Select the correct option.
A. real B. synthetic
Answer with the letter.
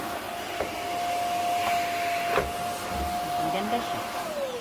A